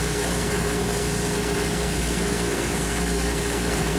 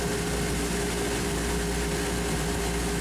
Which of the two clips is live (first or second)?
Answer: second